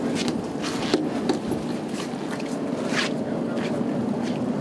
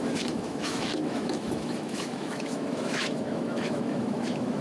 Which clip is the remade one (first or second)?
second